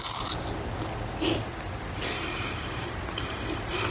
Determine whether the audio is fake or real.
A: real